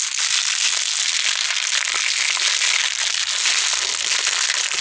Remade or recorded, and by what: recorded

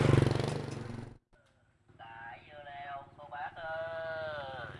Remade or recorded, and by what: recorded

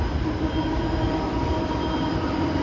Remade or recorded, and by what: recorded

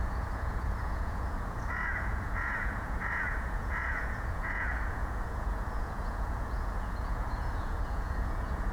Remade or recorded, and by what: remade, vocoder, Vocos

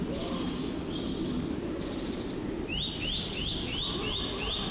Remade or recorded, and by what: recorded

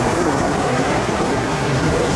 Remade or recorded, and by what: remade, codec, SNAC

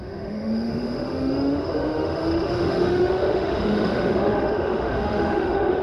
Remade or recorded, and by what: remade, autoencoder, DAC-VAE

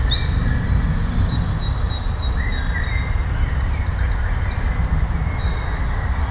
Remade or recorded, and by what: recorded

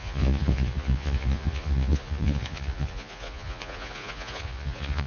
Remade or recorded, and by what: remade, vocoder, Vocos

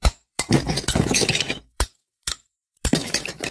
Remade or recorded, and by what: remade, autoencoder, DAC-VAE